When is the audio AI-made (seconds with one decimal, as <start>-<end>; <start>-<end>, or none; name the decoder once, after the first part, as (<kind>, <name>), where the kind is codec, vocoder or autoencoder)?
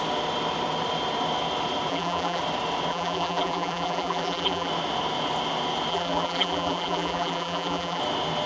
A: 1.9-2.4 (vocoder, BigVGAN v2); 2.9-4.7; 5.9-8.0